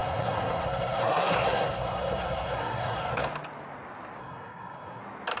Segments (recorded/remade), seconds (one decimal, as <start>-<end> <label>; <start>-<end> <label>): 0.0-3.2 remade; 3.2-4.2 recorded; 4.2-5.0 remade; 5.0-5.4 recorded